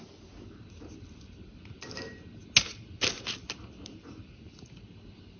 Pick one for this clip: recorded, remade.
recorded